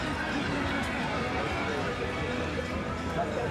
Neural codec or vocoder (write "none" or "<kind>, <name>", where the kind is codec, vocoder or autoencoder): none